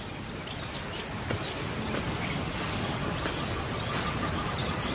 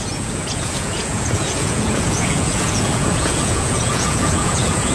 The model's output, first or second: second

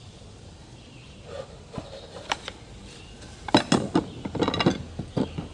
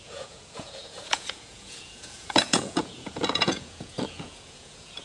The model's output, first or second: second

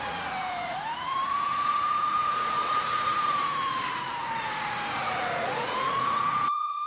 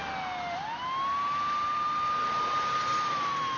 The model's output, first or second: first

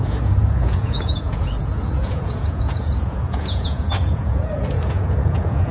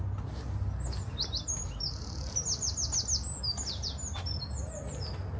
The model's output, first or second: first